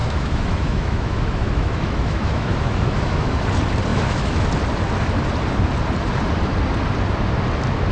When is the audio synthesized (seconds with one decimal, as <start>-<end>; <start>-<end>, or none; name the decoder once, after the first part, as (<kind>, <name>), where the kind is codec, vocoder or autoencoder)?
0.0-3.4 (autoencoder, DAC-VAE); 3.9-4.5